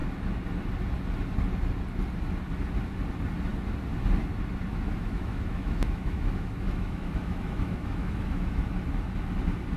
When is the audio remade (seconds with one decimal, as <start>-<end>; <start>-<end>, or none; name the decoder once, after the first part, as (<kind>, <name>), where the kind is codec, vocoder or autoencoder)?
4.7-8.7 (autoencoder, DAC-VAE)